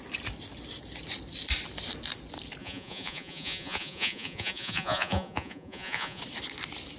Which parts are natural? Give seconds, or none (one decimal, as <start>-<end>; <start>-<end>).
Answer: 0.0-2.6; 6.2-7.0